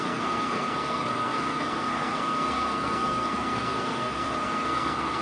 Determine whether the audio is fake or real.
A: fake